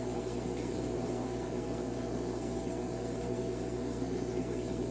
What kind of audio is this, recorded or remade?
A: remade